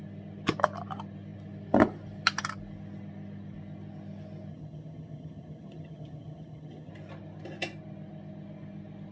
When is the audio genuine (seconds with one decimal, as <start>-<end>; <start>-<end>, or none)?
0.0-4.5; 6.9-9.1